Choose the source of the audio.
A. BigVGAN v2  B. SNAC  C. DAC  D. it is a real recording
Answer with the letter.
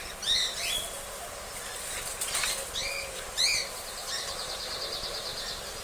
D